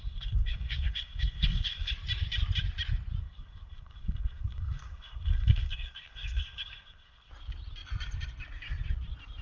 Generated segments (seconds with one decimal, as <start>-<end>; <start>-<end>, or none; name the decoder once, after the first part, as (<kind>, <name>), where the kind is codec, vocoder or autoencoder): 0.0-1.9 (codec, SNAC); 3.2-7.3